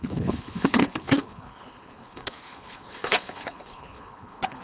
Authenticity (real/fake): fake